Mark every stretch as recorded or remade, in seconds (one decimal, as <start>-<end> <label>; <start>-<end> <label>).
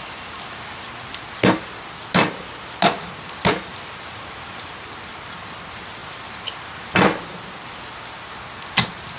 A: 0.0-9.2 recorded